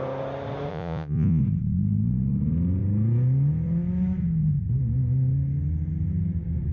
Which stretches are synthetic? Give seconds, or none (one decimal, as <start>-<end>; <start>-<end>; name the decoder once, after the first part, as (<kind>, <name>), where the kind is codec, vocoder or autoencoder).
0.7-1.4 (vocoder, Vocos)